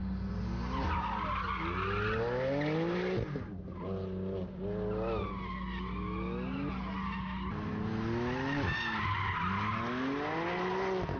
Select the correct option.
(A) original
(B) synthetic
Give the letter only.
A